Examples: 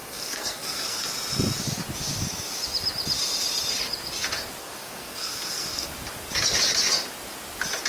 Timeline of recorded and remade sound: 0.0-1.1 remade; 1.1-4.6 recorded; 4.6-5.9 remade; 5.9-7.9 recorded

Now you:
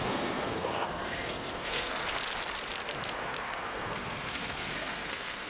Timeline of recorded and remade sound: 0.0-2.0 remade; 2.0-3.2 recorded; 3.2-5.5 remade

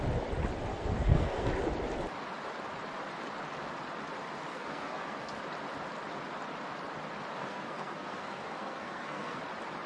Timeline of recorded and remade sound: 0.0-0.7 recorded; 0.7-1.5 remade; 1.5-4.5 recorded; 4.5-5.3 remade; 5.3-7.4 recorded; 7.4-9.4 remade; 9.4-9.9 recorded